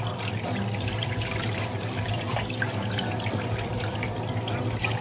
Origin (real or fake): real